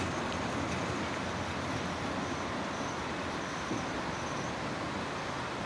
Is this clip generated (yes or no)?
no